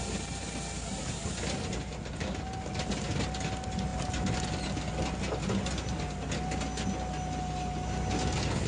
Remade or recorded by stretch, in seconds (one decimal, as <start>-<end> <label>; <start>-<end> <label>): 0.0-8.7 recorded